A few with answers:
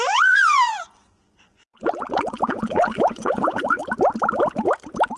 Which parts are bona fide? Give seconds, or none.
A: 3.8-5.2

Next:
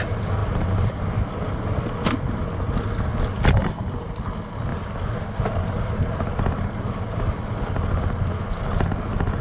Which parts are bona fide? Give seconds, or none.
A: 0.0-9.4